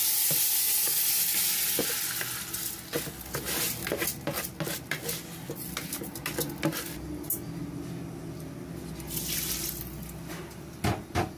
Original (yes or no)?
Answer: yes